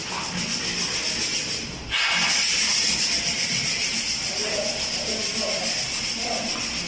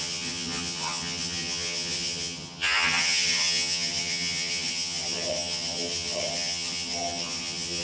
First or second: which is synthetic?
second